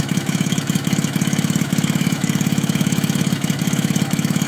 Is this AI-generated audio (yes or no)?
yes